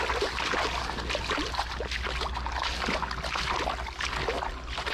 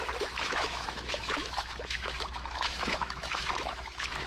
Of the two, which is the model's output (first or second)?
second